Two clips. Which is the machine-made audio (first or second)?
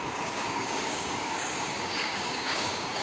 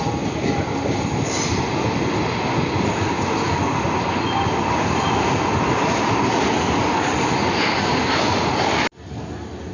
first